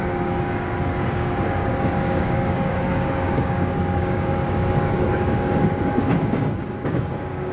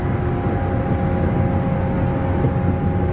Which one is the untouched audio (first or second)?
second